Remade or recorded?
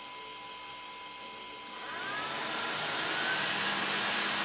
recorded